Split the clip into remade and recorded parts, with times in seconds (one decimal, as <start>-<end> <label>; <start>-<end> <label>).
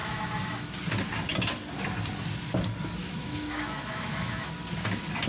0.0-0.7 remade; 0.7-3.0 recorded; 3.0-4.5 remade; 4.5-5.3 recorded